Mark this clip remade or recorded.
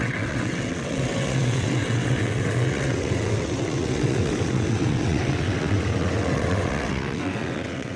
remade